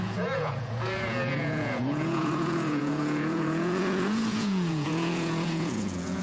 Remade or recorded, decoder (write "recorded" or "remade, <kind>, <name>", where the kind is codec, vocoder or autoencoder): remade, vocoder, Vocos